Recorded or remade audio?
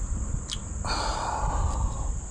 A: recorded